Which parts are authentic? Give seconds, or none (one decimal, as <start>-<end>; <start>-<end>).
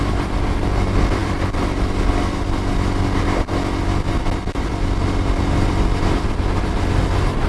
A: 0.0-7.5